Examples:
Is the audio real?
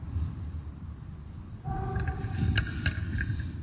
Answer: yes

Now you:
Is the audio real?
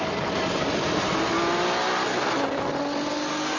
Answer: yes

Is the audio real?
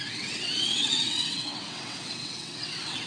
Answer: no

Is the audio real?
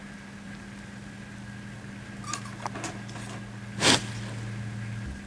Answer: yes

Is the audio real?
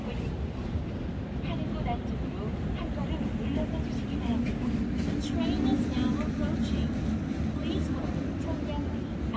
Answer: yes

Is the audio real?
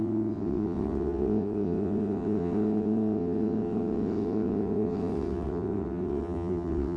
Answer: no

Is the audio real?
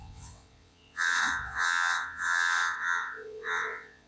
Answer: no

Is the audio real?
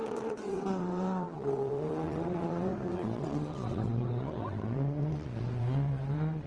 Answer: no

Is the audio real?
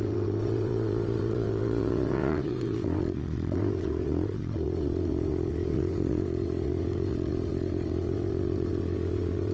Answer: no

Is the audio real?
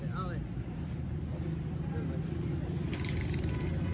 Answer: yes